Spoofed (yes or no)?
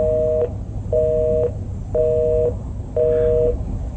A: no